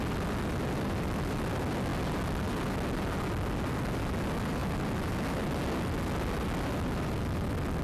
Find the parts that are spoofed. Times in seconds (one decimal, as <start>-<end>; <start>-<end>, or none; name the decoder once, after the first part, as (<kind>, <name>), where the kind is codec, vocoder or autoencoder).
none